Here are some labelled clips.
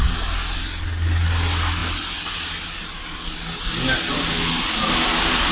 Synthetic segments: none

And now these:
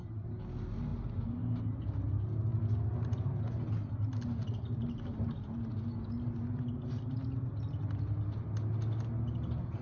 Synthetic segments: none

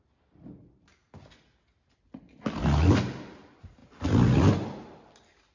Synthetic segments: none